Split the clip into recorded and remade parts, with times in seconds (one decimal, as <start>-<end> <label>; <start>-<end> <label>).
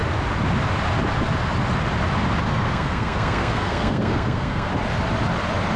0.0-2.5 recorded; 2.5-4.7 remade; 4.7-5.8 recorded